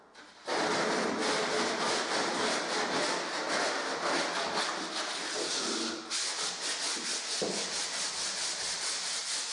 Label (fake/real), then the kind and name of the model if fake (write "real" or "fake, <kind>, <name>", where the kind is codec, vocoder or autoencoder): real